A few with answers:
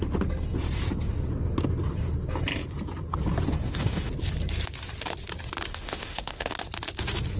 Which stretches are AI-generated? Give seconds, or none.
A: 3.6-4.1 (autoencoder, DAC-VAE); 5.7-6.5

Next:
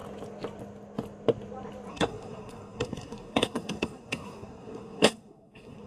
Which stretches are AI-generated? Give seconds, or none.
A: 1.9-5.9 (codec, SNAC)

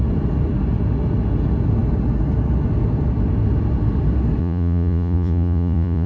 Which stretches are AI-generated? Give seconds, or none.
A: 4.4-6.1 (vocoder, Vocos)

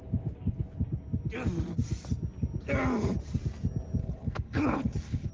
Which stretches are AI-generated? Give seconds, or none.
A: 4.0-5.3 (codec, HILCodec)